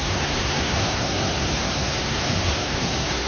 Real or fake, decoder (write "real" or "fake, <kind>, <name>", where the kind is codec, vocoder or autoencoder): fake, codec, SNAC